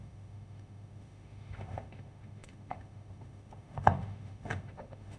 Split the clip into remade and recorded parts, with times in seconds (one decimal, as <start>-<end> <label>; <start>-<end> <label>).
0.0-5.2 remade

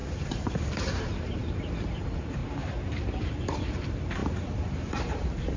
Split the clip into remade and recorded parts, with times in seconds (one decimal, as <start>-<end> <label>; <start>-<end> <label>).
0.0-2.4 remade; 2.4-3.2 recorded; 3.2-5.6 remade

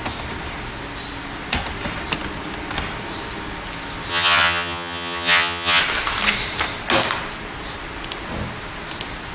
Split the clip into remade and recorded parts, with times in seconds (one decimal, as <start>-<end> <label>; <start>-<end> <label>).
0.0-4.1 recorded; 4.1-5.8 remade; 5.8-9.3 recorded

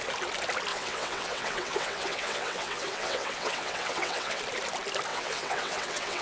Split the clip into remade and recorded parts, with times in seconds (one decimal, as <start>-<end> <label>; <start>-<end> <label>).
0.0-0.7 recorded; 0.7-4.4 remade; 4.4-5.1 recorded; 5.1-6.2 remade

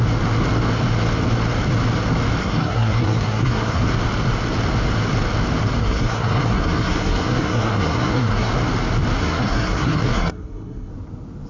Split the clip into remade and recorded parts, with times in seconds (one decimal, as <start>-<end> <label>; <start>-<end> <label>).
0.0-2.4 recorded; 2.4-3.8 remade; 3.8-5.8 recorded; 5.8-8.5 remade; 8.5-9.2 recorded; 9.2-10.9 remade; 10.9-11.5 recorded

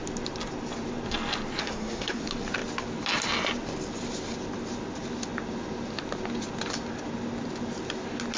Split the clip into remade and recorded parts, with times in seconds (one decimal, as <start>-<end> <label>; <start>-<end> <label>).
0.0-1.6 recorded; 1.6-2.2 remade; 2.2-8.4 recorded

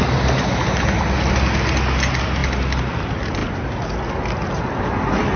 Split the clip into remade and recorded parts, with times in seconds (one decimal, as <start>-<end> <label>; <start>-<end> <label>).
0.0-5.4 recorded